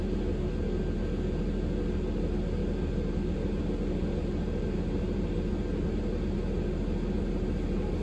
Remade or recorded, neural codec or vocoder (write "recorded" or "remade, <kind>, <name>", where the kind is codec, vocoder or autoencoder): recorded